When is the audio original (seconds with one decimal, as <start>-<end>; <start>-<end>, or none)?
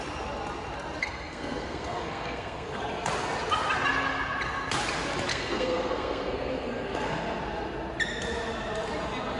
0.0-1.0; 2.8-5.3; 7.4-9.4